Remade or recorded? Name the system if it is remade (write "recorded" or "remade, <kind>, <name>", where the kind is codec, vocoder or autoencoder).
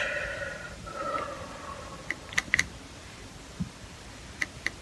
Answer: remade, vocoder, BigVGAN v2